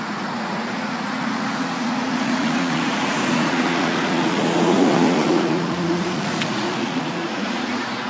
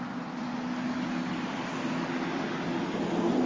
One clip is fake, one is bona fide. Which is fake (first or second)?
first